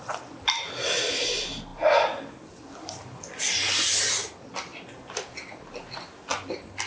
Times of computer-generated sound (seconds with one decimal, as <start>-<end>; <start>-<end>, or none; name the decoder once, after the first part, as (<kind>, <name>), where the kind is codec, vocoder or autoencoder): none